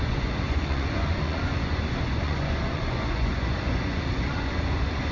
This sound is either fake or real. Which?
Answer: fake